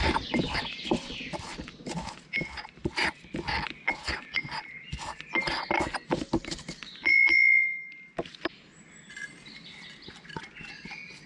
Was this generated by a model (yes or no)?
no